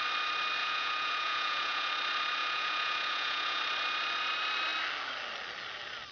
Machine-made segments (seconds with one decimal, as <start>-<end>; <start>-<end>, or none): 0.6-1.9; 2.4-3.6